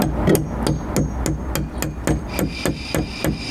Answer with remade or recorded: recorded